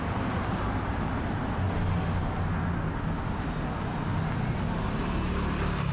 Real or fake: real